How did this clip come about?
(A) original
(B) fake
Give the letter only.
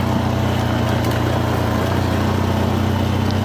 A